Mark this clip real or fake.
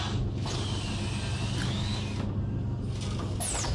real